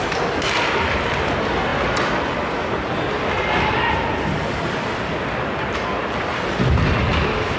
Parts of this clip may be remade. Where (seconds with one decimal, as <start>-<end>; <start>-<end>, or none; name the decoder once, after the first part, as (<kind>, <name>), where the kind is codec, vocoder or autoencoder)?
none

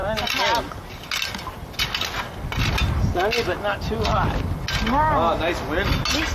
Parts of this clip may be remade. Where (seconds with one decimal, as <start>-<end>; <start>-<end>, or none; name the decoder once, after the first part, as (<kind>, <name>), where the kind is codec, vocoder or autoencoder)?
none

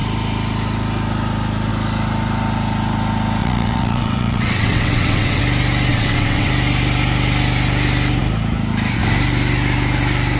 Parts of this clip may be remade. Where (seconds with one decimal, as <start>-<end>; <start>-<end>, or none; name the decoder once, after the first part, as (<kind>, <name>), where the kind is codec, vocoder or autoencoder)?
3.4-5.4 (vocoder, WaveNeXt); 5.9-6.5

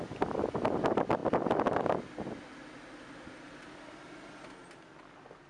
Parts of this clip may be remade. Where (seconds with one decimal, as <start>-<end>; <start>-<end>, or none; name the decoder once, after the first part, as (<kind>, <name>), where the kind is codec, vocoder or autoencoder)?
none

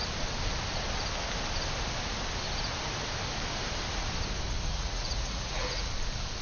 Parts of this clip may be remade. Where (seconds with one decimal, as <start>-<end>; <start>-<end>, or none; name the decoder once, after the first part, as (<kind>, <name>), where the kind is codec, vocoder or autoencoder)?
4.7-5.9 (vocoder, Vocos)

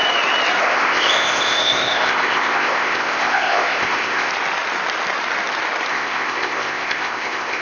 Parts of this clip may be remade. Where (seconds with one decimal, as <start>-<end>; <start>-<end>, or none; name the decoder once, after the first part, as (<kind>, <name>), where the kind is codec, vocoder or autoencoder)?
0.6-4.3 (codec, ZipCodec); 5.9-7.6

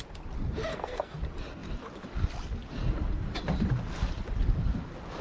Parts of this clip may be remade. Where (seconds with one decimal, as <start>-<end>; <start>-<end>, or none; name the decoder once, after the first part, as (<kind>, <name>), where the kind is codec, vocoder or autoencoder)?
0.7-1.2 (codec, SNAC)